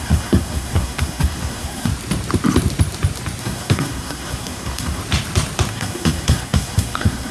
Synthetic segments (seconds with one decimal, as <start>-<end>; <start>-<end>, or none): 0.0-1.9; 3.4-5.0; 5.7-7.3